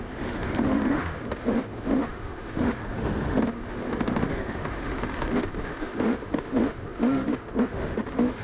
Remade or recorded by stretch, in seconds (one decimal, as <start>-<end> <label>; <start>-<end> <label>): 0.0-8.4 remade